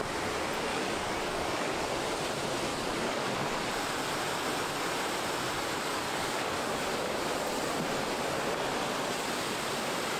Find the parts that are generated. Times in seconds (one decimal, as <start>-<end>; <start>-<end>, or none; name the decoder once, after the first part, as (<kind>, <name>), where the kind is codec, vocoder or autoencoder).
0.7-1.9 (codec, DAC); 2.7-3.4; 5.8-6.7